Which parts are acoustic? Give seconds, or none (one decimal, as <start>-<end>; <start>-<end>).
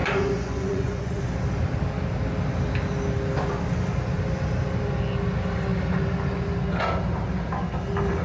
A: 1.2-8.2